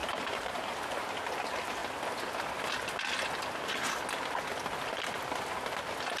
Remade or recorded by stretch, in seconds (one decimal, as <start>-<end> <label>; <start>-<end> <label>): 0.0-0.8 remade; 0.8-6.2 recorded